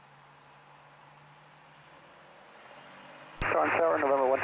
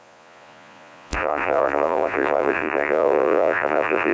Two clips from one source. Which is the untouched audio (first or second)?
first